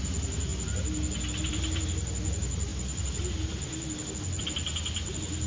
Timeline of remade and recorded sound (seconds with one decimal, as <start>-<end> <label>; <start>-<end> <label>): 0.0-5.5 recorded